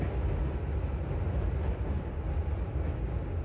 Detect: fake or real real